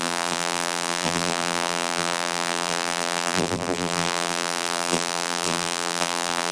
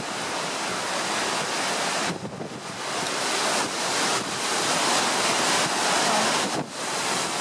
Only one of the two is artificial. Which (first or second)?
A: first